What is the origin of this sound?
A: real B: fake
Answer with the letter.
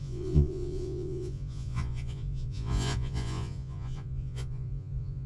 B